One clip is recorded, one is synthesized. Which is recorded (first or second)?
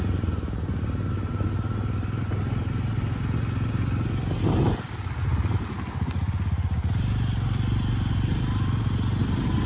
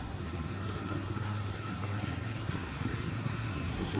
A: first